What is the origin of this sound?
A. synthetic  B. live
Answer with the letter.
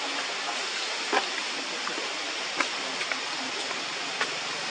B